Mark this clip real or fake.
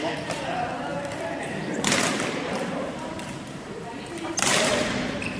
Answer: fake